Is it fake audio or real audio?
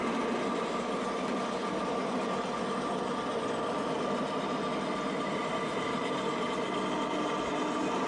real